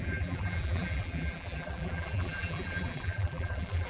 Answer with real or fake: fake